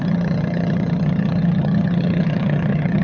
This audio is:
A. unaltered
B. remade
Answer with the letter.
B